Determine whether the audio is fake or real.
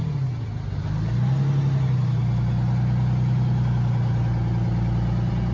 real